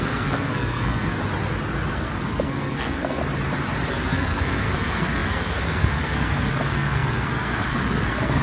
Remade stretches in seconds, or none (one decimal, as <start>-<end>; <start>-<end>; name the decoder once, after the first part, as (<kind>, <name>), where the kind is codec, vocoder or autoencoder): 0.0-1.2 (codec, SNAC); 1.9-3.2; 3.9-8.4